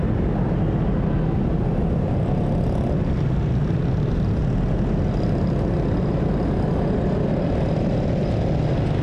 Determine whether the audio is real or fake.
real